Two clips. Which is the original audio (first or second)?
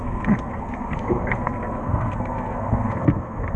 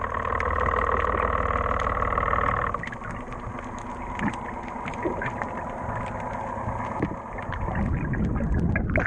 second